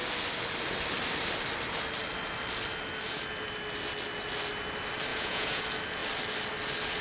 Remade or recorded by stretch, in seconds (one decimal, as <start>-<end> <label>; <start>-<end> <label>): 0.0-5.1 recorded; 5.1-5.6 remade; 5.6-7.0 recorded